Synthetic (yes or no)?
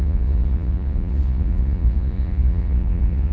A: yes